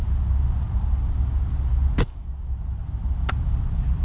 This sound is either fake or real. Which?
real